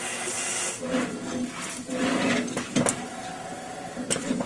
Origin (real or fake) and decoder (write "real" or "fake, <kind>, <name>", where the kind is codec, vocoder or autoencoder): real